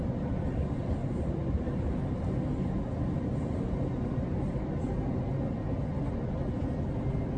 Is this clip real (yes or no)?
yes